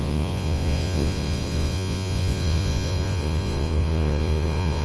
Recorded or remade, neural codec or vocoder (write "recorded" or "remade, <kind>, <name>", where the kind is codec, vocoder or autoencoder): remade, vocoder, Vocos